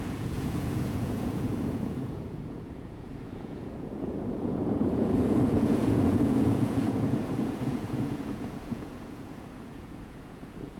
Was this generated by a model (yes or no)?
yes